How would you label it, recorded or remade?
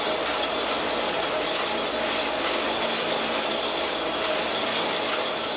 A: recorded